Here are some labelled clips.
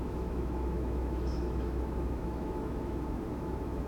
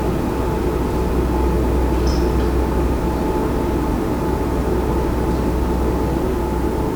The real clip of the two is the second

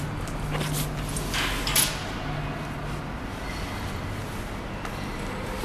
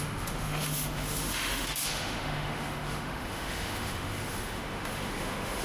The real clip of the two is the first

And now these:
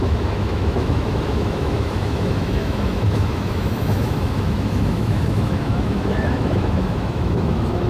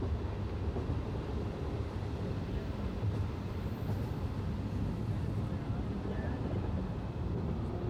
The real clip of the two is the second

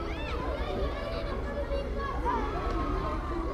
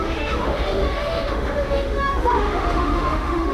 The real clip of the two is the first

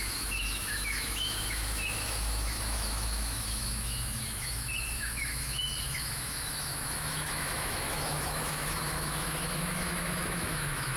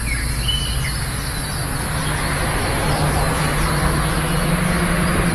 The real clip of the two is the second